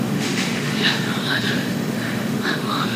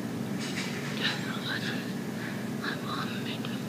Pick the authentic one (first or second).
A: second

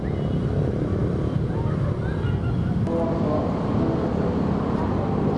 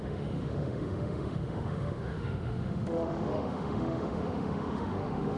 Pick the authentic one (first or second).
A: first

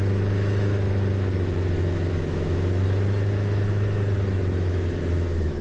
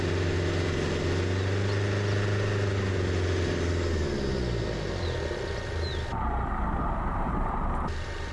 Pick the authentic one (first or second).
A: second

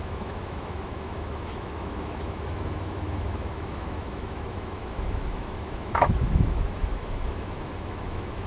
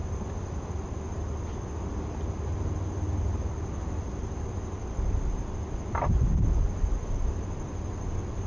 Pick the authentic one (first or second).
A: second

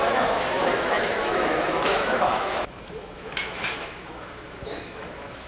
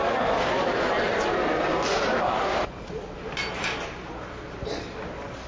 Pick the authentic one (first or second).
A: second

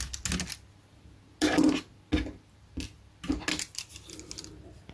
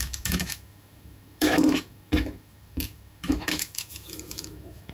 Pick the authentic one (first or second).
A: first